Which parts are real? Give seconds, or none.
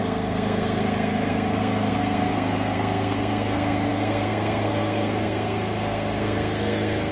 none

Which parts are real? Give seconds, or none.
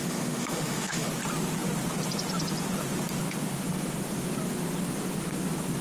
1.1-5.8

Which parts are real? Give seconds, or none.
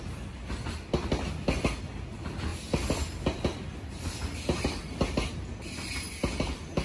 0.0-6.8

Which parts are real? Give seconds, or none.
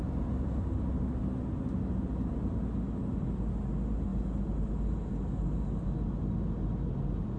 0.0-7.4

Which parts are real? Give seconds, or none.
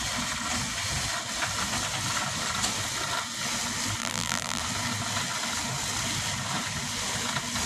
0.0-4.0; 4.6-7.7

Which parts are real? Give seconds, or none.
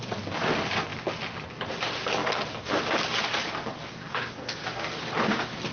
0.0-3.9; 5.0-5.7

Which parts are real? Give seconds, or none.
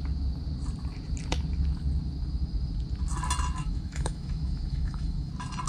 0.0-3.6; 5.3-5.7